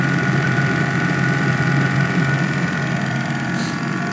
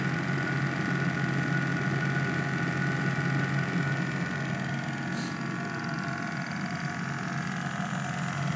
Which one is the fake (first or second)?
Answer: first